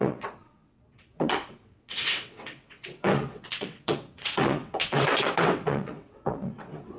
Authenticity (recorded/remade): remade